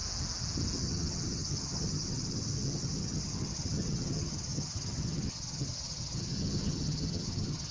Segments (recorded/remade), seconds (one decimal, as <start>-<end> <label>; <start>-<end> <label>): 0.0-0.8 recorded; 0.8-7.7 remade